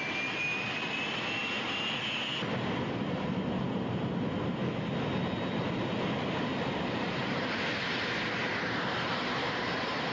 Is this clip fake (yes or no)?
no